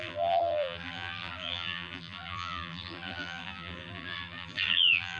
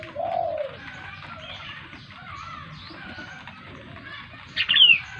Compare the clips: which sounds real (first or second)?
second